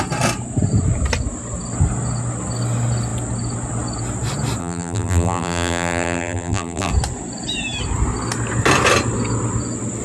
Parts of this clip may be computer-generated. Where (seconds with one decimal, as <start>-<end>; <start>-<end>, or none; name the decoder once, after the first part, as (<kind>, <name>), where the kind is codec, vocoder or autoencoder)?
4.6-6.9 (vocoder, BigVGAN v2)